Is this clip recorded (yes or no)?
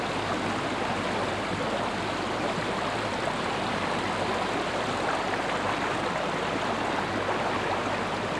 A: yes